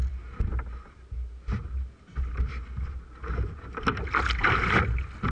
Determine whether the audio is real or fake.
real